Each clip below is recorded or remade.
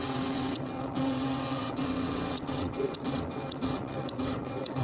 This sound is remade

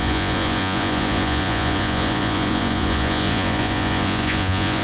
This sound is remade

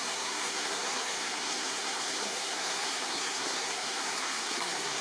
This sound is remade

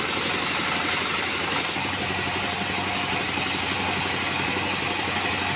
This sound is recorded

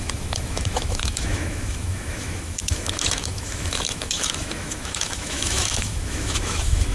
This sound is remade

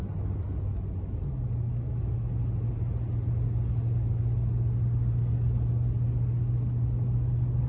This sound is recorded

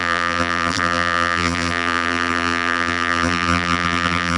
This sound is remade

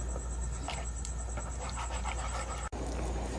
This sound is recorded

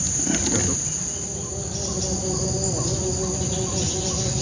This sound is recorded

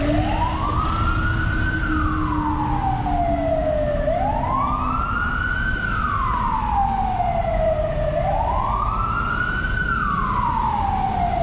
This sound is recorded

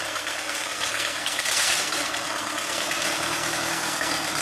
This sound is remade